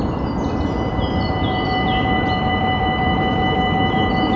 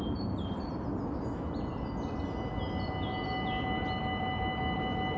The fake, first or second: first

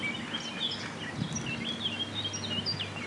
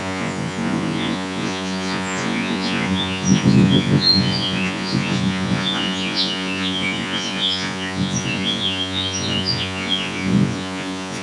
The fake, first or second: second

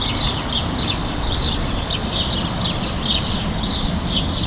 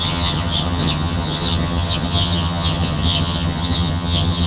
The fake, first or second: second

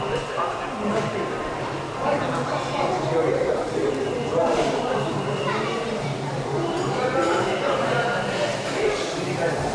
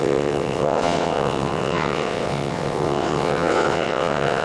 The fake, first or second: second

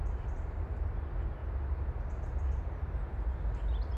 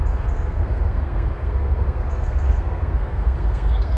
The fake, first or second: second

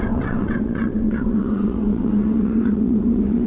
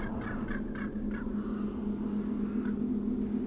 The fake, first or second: first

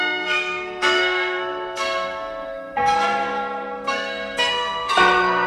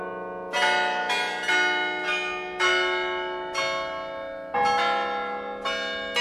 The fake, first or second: first